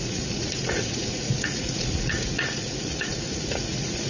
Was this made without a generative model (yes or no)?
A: no